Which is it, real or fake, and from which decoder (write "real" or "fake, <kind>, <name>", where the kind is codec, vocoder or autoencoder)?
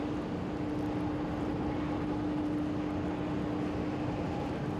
real